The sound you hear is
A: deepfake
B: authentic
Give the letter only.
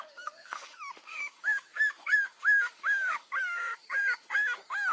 A